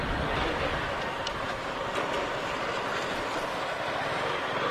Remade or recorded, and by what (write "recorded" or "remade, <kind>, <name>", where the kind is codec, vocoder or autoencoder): recorded